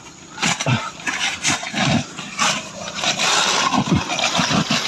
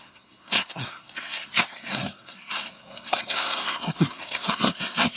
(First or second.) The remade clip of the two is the second